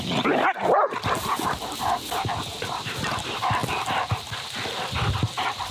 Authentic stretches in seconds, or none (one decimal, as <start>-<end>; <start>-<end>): 0.0-5.7